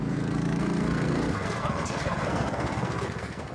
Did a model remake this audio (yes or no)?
yes